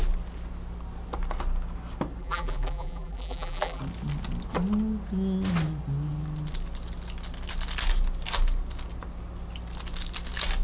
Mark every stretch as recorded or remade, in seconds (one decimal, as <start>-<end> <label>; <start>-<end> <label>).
0.0-2.2 recorded; 2.2-3.8 remade; 3.8-10.6 recorded